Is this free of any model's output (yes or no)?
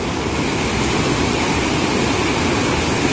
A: yes